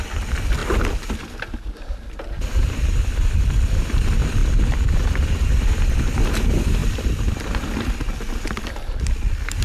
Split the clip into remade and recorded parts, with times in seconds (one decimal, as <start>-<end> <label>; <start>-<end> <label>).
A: 0.0-9.6 remade